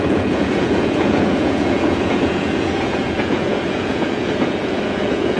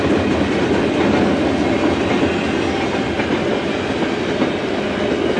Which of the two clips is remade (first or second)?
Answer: first